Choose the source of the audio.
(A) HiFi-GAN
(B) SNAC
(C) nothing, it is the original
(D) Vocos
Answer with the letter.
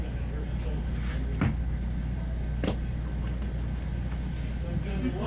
C